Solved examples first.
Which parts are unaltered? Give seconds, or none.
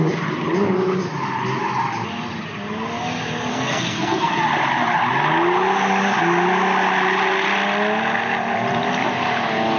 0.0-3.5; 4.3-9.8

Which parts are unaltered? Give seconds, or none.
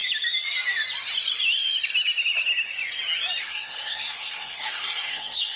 0.0-3.4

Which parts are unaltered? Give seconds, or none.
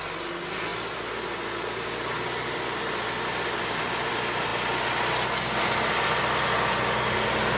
0.0-7.6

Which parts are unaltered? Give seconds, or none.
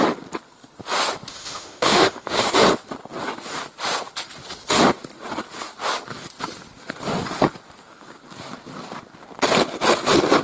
0.0-1.3; 2.5-10.4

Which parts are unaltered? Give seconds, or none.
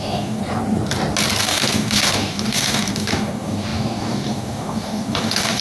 0.4-1.4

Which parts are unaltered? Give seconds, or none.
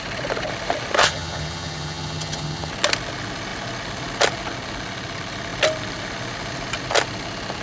0.0-1.0; 2.7-7.6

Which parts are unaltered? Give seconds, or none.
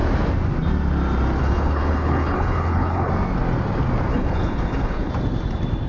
0.0-1.4; 3.1-4.1; 5.1-5.9